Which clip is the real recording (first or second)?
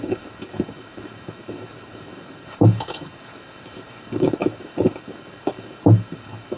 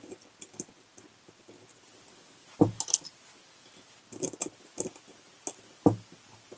second